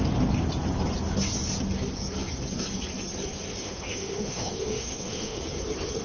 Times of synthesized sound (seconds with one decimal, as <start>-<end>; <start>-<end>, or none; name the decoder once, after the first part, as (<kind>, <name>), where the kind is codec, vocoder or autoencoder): 3.6-5.4 (autoencoder, DAC-VAE)